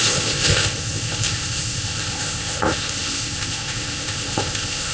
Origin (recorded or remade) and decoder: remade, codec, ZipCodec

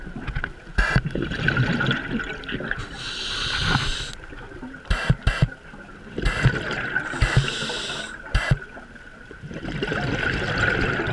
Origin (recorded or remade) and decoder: recorded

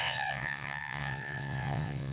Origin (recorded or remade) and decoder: remade, vocoder, WaveNeXt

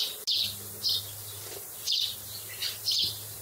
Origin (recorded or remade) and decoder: recorded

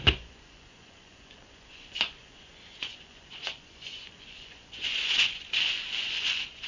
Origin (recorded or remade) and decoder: remade, vocoder, Vocos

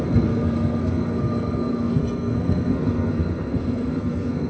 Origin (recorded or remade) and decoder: remade, codec, SNAC